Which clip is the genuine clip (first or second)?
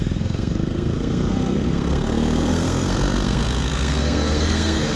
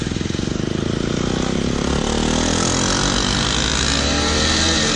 second